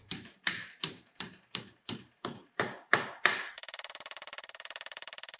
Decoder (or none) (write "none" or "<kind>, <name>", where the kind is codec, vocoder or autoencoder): vocoder, BigVGAN v2